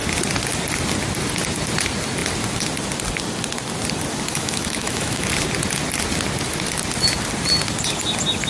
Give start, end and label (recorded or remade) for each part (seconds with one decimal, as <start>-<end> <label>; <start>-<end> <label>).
0.0-4.3 recorded; 4.3-5.3 remade; 5.3-8.5 recorded